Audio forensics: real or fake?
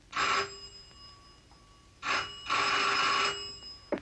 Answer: real